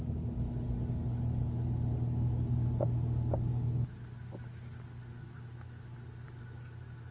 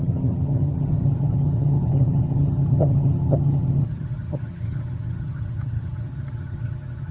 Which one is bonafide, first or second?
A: first